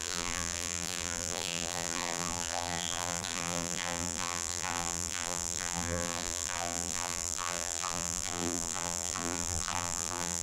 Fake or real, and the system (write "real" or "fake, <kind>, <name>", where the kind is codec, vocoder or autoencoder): fake, vocoder, BigVGAN v2